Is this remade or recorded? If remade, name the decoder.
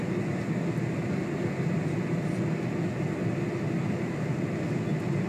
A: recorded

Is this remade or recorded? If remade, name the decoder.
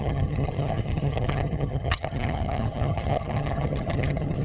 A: remade, vocoder, HiFi-GAN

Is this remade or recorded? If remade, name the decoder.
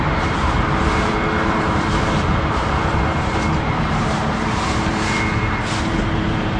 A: remade, vocoder, BigVGAN v2